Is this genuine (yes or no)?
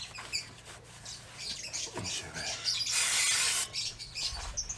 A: yes